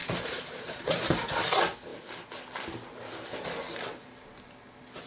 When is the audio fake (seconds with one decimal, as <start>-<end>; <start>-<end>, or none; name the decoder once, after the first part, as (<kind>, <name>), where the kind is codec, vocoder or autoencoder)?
0.0-1.1 (vocoder, BigVGAN v2)